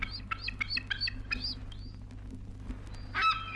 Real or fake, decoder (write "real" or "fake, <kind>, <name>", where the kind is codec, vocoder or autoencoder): real